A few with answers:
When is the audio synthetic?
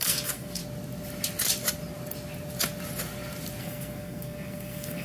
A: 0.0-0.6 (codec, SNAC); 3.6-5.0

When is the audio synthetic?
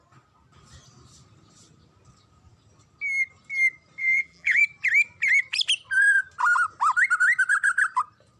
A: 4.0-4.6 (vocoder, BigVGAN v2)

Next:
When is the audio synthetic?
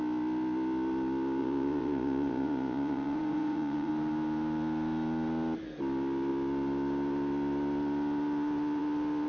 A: 1.4-3.9 (vocoder, Vocos)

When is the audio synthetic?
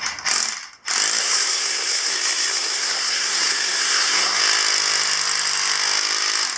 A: 1.2-4.4 (codec, SNAC)